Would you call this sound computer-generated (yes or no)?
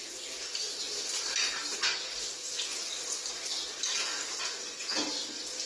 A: no